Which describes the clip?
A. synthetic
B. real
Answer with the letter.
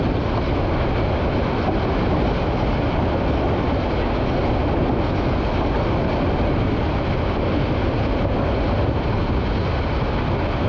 B